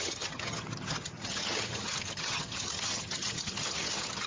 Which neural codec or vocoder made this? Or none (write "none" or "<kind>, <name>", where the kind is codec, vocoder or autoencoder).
vocoder, HiFi-GAN